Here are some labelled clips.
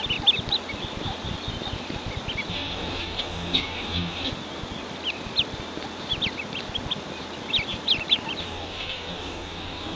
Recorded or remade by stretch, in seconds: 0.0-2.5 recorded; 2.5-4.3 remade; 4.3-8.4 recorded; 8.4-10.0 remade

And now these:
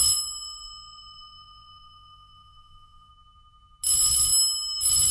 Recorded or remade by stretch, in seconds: 0.0-3.1 remade; 3.1-5.1 recorded

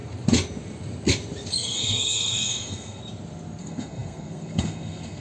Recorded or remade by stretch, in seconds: 0.0-1.5 recorded; 1.5-3.0 remade; 3.0-3.6 recorded; 3.6-5.2 remade

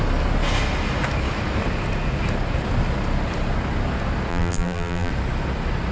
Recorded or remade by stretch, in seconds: 0.0-4.3 recorded; 4.3-5.1 remade; 5.1-5.9 recorded